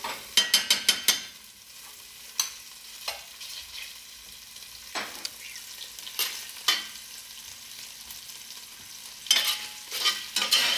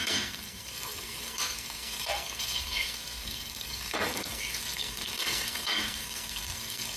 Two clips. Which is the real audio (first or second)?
first